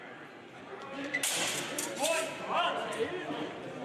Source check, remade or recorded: recorded